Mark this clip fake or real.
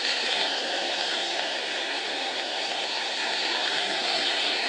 fake